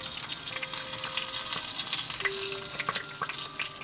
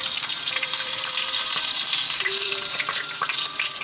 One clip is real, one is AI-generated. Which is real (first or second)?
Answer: first